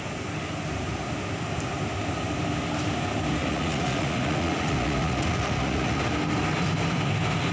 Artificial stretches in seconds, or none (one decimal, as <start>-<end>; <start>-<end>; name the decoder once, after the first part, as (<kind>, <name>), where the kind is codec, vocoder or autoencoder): 3.4-6.0 (vocoder, Vocos)